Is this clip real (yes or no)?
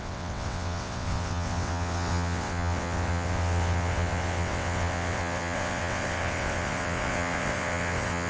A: no